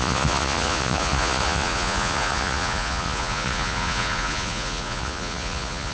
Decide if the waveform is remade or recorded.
remade